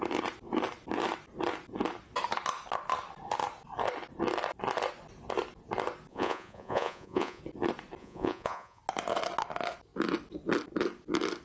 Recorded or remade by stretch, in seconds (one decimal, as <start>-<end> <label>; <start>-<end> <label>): 0.0-6.1 recorded; 6.1-7.4 remade; 7.4-8.0 recorded; 8.0-8.8 remade; 8.8-11.4 recorded